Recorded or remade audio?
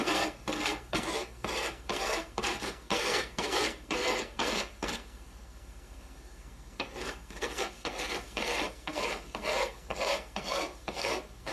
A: remade